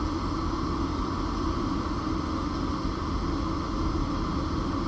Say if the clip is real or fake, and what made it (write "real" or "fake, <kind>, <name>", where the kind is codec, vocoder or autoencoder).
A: real